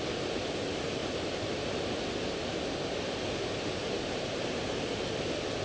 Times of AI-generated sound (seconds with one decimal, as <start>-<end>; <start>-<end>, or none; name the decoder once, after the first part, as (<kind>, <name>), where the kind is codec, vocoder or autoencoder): none